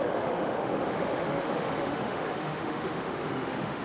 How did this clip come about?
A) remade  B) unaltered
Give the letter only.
A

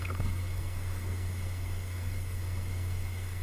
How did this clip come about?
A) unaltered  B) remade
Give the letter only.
B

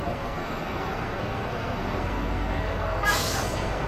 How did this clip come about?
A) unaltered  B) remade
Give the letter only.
B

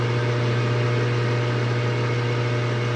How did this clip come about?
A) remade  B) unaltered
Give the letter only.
B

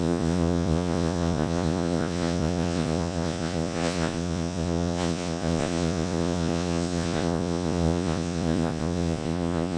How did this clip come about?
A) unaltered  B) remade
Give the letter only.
B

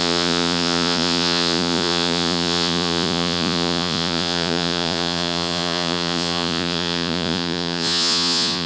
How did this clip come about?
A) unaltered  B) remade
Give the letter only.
B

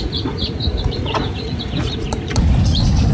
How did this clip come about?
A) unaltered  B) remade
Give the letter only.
B